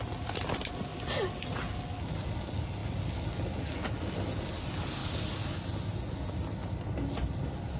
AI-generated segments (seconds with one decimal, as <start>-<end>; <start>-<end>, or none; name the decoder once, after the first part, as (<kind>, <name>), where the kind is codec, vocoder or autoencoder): none